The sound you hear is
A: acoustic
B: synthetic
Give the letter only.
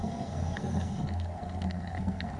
B